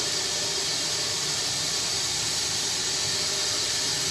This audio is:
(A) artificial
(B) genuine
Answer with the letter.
B